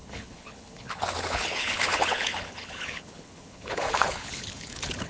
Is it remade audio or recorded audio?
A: remade